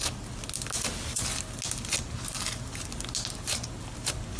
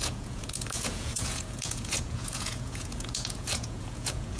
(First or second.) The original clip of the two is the first